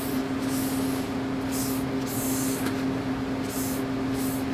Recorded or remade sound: recorded